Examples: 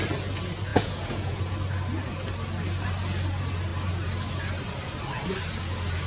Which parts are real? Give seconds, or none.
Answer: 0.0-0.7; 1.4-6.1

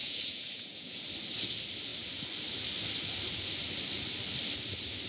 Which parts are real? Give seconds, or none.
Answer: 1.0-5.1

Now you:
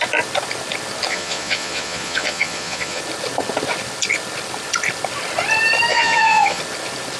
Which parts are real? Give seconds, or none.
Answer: 0.0-1.1; 3.0-5.9; 6.6-7.2

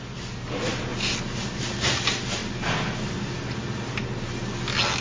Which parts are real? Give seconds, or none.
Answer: 0.0-5.0

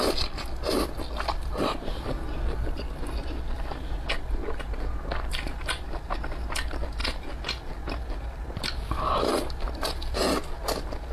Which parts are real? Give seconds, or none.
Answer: 0.0-11.1

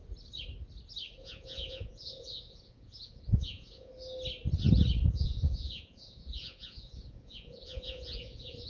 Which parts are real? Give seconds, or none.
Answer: 0.0-1.2; 3.9-5.1

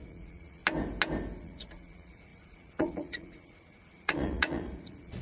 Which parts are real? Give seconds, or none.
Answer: 0.6-1.4